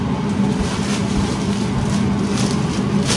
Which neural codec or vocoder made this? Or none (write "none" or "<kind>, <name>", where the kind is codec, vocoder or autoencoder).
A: none